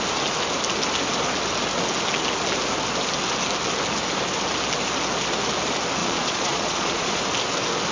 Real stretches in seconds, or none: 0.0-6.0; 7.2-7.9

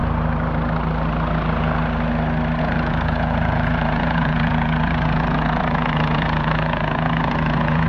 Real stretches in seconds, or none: 0.0-2.6

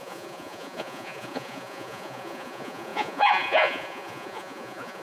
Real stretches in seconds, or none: none